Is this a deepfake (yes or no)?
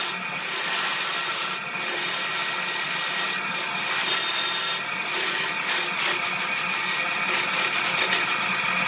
no